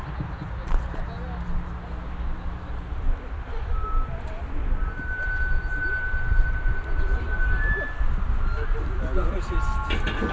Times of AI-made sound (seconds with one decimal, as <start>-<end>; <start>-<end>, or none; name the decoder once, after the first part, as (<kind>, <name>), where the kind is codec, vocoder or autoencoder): none

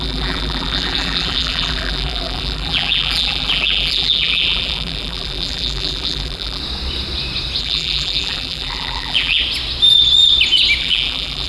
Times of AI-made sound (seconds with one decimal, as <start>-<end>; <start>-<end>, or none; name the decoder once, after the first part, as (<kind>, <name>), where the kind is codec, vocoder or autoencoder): 0.0-6.6 (vocoder, BigVGAN v2); 7.6-9.4; 10.8-11.5

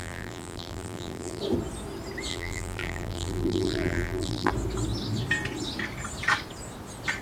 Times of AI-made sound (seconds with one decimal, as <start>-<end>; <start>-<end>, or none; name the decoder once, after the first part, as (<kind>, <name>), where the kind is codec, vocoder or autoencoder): 0.0-1.4 (vocoder, BigVGAN v2); 2.3-4.5

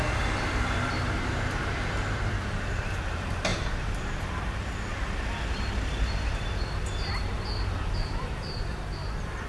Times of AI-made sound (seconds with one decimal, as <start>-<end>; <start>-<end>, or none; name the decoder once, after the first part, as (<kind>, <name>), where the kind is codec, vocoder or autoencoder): 0.0-3.5 (vocoder, BigVGAN v2); 7.1-9.5

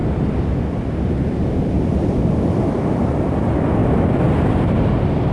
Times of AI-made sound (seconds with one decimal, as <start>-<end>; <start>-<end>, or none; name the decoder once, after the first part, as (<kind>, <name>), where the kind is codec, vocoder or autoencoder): 0.0-3.2 (vocoder, BigVGAN v2)

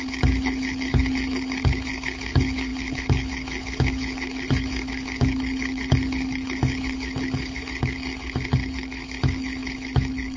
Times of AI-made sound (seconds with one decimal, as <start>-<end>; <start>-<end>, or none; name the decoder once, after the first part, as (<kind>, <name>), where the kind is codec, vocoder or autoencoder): 0.0-10.4 (codec, HILCodec)